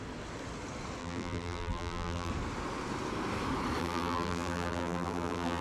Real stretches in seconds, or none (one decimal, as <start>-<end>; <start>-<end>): 0.0-1.0; 2.3-3.8